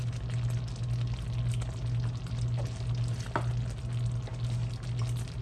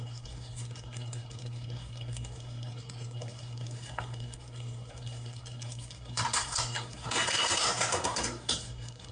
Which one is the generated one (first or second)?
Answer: second